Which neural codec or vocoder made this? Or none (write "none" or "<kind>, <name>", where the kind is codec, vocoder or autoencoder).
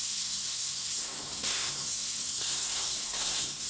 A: codec, SNAC